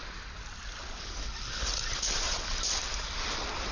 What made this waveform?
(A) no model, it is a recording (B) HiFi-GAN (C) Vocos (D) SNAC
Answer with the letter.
A